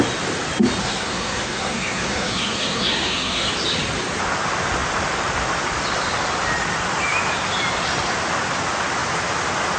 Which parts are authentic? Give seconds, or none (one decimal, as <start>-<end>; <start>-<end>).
0.0-0.8; 3.5-9.8